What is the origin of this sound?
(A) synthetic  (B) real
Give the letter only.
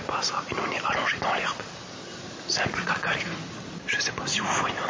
B